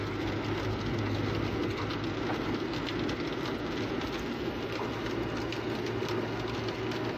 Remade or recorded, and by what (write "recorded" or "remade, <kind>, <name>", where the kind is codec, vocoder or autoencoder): recorded